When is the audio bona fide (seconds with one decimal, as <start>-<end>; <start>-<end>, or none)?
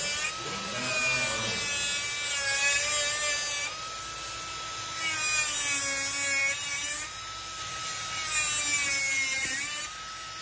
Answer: 0.0-6.4; 7.2-8.8; 9.8-10.4